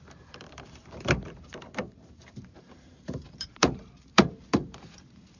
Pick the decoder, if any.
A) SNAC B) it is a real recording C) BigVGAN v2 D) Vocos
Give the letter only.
C